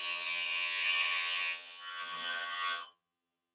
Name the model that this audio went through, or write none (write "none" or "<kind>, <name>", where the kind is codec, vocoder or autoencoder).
vocoder, HiFi-GAN